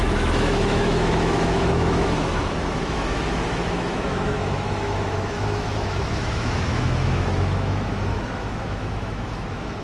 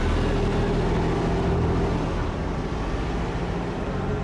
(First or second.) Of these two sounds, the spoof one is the first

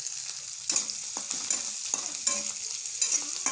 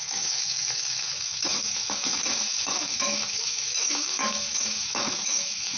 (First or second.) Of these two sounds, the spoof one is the second